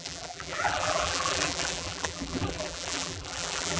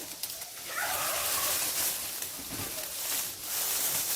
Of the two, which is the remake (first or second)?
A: first